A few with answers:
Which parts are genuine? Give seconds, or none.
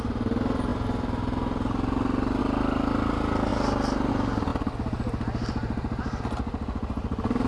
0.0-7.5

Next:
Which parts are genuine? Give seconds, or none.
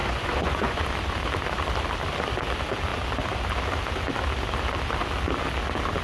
0.8-6.0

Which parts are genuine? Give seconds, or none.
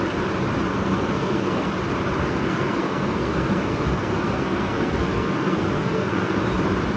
0.0-0.7; 1.7-2.2; 6.4-7.0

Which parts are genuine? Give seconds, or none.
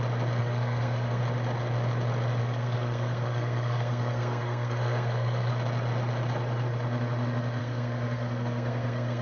0.0-0.4; 1.2-2.4; 5.5-7.6